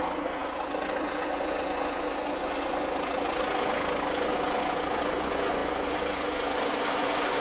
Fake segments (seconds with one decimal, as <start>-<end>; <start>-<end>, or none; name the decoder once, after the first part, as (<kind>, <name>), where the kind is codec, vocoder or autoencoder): 0.0-7.4 (vocoder, Vocos)